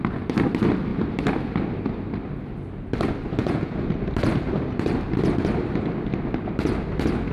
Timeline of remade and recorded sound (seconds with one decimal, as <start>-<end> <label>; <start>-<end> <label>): 0.0-3.4 recorded; 3.4-3.9 remade; 3.9-7.3 recorded